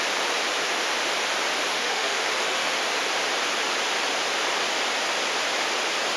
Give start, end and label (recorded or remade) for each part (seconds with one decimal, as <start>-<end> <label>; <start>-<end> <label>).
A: 0.0-1.7 recorded; 1.7-2.8 remade; 2.8-6.2 recorded